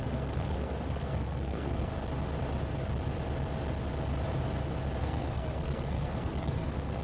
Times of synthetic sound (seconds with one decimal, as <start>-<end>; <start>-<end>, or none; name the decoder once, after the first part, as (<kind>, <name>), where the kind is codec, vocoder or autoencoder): 0.0-1.9 (codec, SNAC); 5.0-7.0